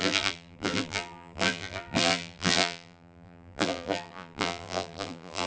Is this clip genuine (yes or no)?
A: no